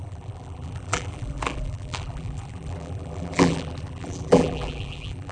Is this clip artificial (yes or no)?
yes